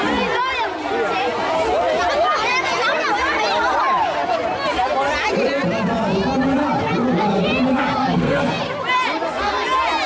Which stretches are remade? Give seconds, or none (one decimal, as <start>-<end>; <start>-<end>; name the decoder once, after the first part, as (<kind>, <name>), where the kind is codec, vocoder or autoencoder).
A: 8.0-8.5 (codec, SNAC)